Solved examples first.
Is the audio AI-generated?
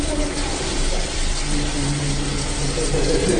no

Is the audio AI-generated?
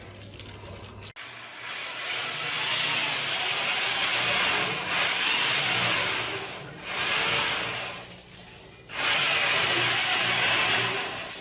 no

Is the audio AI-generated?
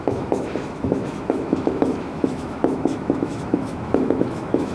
yes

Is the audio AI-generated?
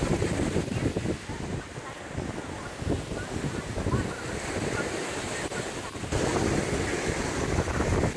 no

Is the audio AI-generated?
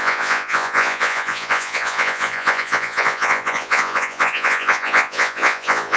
yes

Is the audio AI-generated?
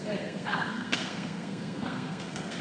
yes